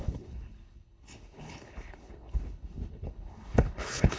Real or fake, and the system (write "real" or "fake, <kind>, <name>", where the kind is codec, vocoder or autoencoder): fake, codec, HILCodec